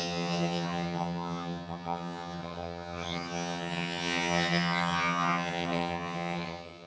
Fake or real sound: fake